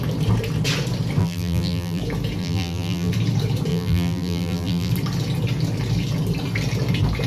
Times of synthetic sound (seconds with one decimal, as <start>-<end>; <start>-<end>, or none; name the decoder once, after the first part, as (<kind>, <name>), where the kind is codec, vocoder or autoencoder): 1.2-2.0 (vocoder, BigVGAN v2); 2.4-3.1; 3.7-4.9